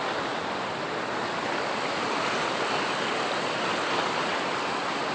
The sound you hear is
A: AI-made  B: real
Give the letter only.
B